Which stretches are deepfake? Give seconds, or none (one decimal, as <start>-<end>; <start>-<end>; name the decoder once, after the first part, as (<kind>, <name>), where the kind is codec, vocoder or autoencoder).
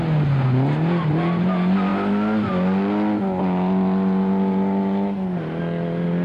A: none